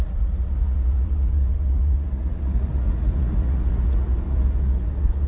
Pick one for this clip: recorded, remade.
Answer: remade